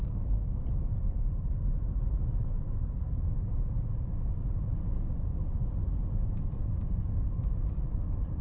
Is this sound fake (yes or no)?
yes